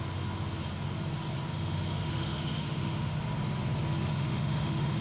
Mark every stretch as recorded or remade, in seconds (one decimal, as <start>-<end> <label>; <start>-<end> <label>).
0.0-1.5 recorded; 1.5-3.2 remade; 3.2-4.1 recorded; 4.1-5.0 remade